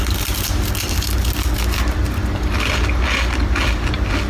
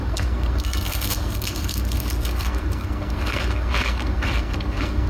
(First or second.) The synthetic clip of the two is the second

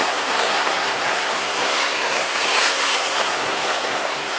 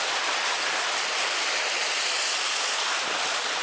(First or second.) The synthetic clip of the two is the first